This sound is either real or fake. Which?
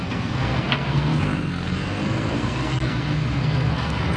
fake